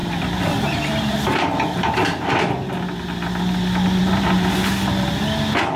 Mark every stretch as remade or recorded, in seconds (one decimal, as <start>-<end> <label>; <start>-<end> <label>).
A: 0.0-2.3 remade; 2.3-5.8 recorded